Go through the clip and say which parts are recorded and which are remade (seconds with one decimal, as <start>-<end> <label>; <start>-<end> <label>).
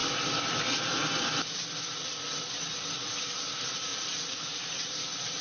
0.0-3.2 recorded; 3.2-5.4 remade